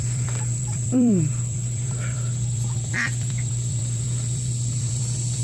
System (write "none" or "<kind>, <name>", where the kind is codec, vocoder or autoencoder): vocoder, BigVGAN v2